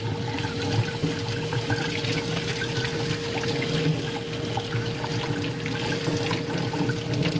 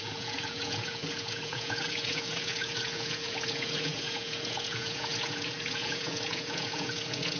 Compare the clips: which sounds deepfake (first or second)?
second